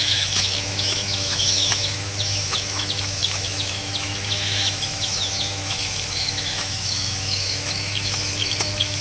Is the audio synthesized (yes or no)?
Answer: yes